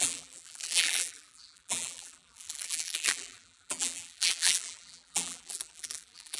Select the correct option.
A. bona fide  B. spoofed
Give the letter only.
B